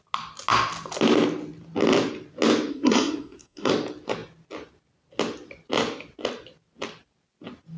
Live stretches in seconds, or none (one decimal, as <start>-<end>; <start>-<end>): 0.0-2.7; 3.7-7.8